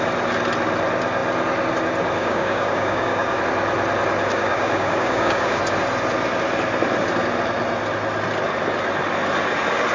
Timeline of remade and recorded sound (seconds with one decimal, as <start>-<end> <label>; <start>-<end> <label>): 0.0-2.2 recorded; 2.2-3.4 remade; 3.4-4.3 recorded; 4.3-5.6 remade; 5.6-9.9 recorded